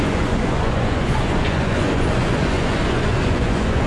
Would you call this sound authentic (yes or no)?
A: no